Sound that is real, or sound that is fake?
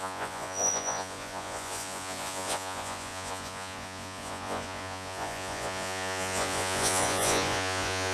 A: fake